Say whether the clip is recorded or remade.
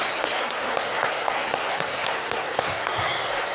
remade